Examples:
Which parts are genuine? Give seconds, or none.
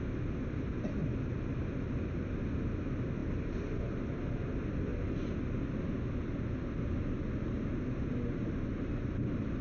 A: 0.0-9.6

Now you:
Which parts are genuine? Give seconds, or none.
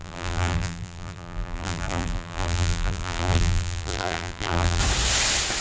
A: 4.8-5.6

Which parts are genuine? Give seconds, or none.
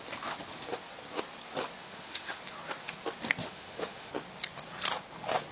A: 0.0-1.8; 2.4-3.4; 4.1-5.5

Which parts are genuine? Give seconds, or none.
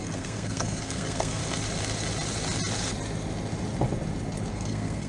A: 1.4-4.5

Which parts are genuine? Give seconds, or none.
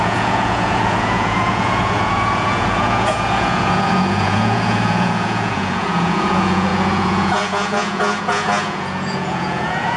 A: none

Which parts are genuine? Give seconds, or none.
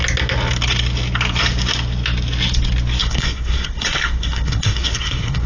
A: 0.0-3.0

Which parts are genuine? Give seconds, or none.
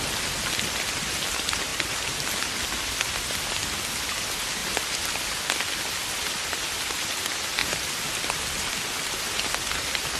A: 0.0-1.7; 2.5-4.6; 5.4-7.6; 8.7-10.2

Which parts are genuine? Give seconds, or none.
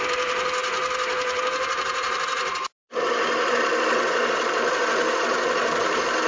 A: 0.0-6.3